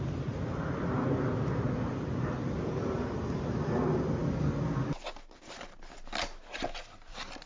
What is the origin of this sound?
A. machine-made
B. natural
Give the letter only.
B